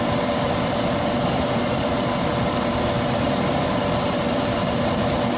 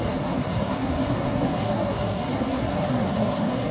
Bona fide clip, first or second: first